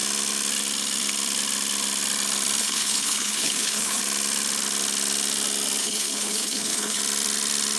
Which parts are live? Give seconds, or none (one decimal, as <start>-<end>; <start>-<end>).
0.0-2.6; 4.0-5.8; 7.0-7.8